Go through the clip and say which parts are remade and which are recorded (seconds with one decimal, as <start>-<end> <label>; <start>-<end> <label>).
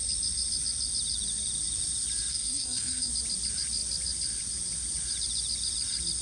0.0-2.3 recorded; 2.3-3.1 remade; 3.1-6.2 recorded